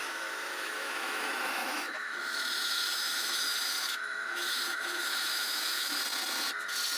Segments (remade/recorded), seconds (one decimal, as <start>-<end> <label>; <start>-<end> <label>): 0.0-6.0 remade; 6.0-7.0 recorded